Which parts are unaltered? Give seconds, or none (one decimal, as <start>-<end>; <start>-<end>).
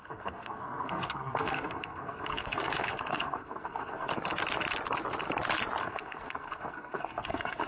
4.1-5.8